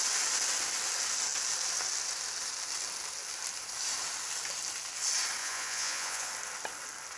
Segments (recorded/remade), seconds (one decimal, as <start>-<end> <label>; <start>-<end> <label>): 0.0-5.4 recorded; 5.4-6.3 remade; 6.3-7.2 recorded